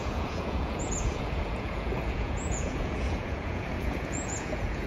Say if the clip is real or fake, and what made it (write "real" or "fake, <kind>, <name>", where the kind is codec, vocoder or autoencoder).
fake, vocoder, Vocos